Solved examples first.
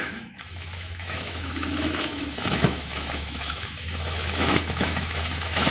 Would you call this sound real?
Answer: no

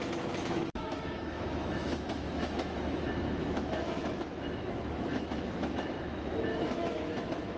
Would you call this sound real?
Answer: no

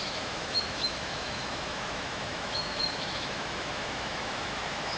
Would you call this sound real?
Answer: no